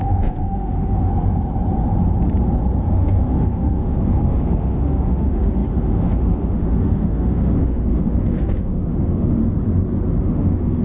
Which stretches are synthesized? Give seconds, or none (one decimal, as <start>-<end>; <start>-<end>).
0.0-1.1; 2.9-9.4; 10.2-10.8